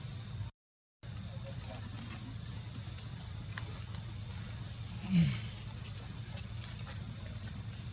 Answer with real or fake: real